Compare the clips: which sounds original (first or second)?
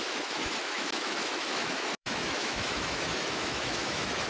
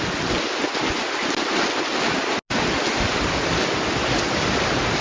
second